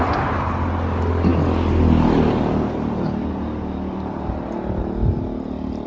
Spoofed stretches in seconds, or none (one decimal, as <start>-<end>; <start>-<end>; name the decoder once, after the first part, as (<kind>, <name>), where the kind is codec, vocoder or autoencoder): none